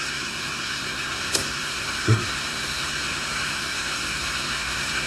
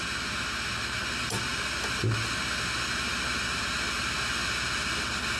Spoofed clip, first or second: first